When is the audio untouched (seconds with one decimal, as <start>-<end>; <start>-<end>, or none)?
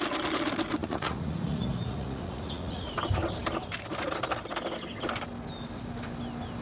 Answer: 0.0-0.8; 2.9-6.6